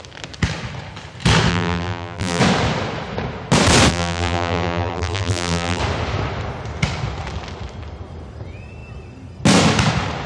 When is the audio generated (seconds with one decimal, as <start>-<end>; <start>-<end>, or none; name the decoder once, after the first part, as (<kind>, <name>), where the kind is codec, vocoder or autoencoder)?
1.5-2.4 (vocoder, BigVGAN v2); 3.9-5.8